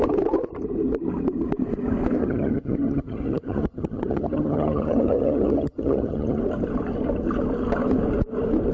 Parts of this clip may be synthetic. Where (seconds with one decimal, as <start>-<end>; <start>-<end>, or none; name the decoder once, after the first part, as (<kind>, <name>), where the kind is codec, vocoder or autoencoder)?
2.2-6.4 (vocoder, HiFi-GAN)